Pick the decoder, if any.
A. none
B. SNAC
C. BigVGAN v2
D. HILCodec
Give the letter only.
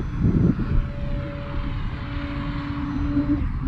A